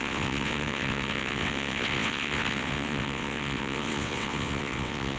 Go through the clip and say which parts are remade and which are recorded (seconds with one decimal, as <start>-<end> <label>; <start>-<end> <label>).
0.0-5.2 remade